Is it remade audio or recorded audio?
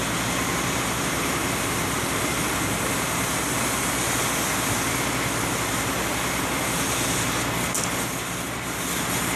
recorded